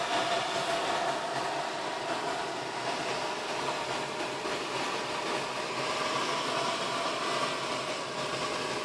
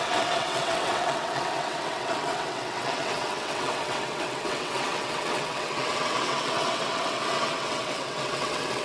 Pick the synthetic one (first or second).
second